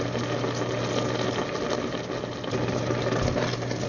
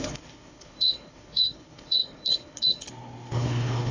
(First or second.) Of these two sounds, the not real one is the second